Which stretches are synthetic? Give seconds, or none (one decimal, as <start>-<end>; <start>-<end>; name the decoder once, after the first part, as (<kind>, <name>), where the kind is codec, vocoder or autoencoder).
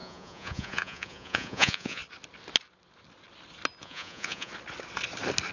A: 0.0-2.0 (vocoder, Vocos); 3.8-4.5